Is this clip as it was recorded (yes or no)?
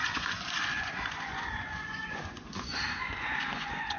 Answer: no